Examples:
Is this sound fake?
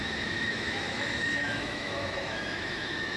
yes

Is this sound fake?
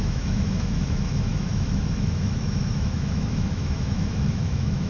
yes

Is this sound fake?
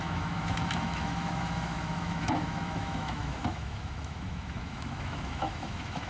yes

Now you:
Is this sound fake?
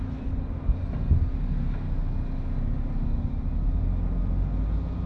no